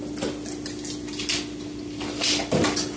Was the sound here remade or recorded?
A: recorded